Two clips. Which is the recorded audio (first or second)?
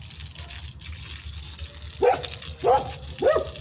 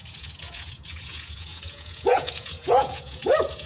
first